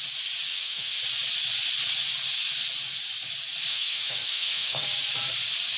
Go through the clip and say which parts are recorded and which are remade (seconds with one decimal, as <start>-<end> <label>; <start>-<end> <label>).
0.0-0.5 recorded; 0.5-1.0 remade; 1.0-3.7 recorded; 3.7-4.8 remade; 4.8-5.8 recorded